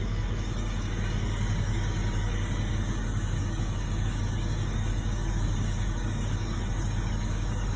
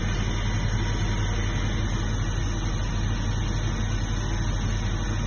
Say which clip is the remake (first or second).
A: first